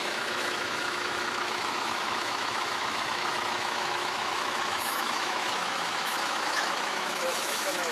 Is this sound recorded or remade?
remade